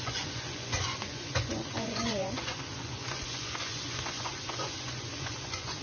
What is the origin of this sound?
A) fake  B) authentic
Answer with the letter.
A